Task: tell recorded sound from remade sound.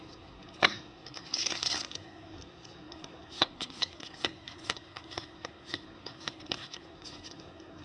remade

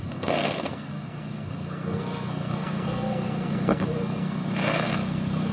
remade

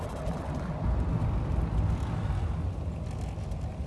recorded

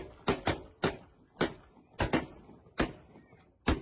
recorded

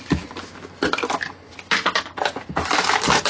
recorded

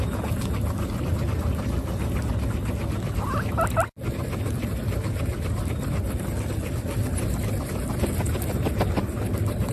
recorded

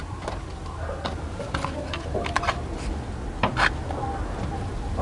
recorded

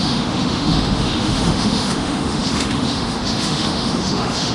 remade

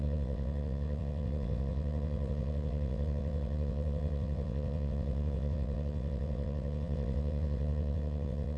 remade